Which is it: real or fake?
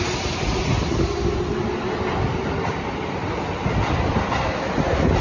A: real